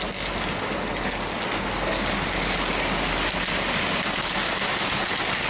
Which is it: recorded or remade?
recorded